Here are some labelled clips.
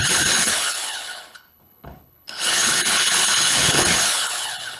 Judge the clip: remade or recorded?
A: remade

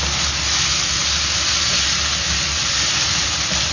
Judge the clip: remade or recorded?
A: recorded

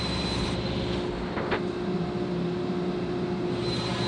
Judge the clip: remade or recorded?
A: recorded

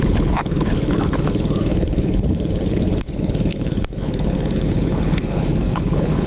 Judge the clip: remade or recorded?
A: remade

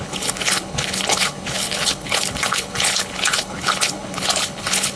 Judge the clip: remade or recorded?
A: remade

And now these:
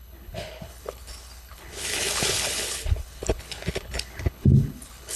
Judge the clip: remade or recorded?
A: remade